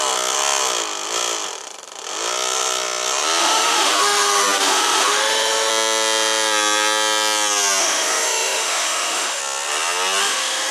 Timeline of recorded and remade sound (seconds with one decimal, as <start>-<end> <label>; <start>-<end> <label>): 0.0-3.4 recorded; 3.4-5.7 remade; 5.7-7.8 recorded; 7.8-9.4 remade; 9.4-10.2 recorded; 10.2-10.7 remade